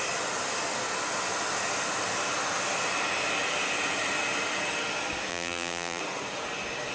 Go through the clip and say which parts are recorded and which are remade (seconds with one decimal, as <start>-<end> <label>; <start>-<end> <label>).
0.0-5.3 recorded; 5.3-6.0 remade; 6.0-6.9 recorded